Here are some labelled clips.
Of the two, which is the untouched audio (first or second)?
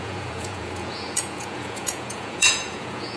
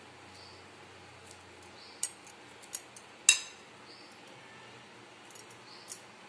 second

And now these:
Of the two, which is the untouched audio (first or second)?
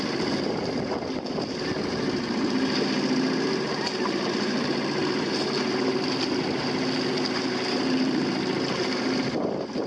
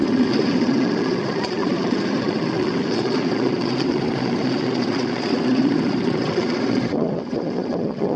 first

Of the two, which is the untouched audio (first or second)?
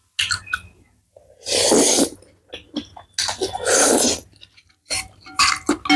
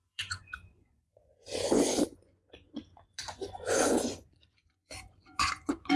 first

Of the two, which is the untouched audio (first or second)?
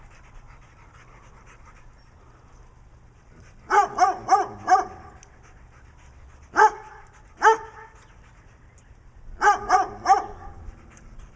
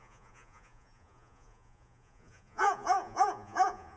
first